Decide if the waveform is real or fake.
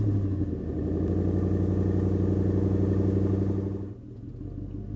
real